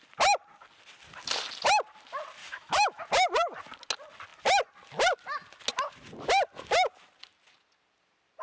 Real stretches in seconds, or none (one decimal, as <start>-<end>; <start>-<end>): 0.0-2.4; 3.0-8.4